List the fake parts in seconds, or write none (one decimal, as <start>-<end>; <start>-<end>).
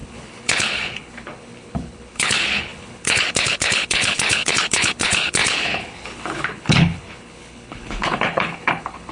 0.0-9.1